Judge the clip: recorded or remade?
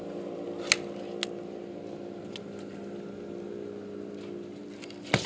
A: recorded